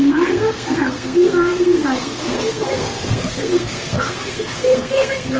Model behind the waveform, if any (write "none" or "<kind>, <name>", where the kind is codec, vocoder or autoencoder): codec, SNAC